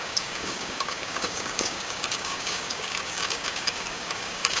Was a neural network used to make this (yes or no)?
yes